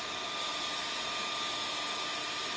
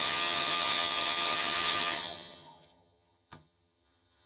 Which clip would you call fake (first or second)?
second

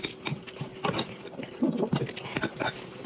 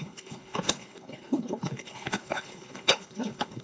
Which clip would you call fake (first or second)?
second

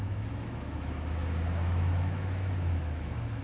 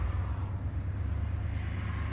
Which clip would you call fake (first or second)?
first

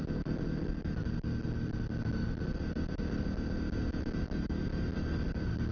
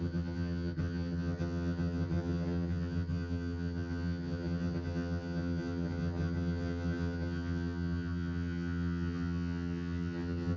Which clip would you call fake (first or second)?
second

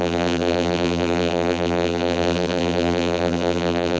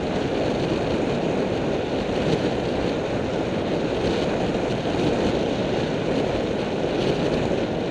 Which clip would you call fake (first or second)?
first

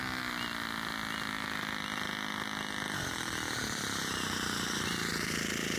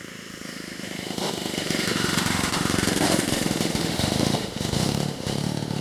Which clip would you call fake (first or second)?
second